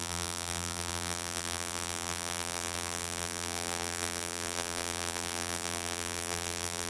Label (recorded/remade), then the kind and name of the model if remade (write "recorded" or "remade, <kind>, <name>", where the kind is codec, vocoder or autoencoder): remade, vocoder, BigVGAN v2